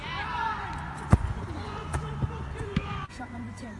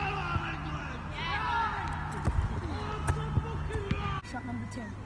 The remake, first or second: first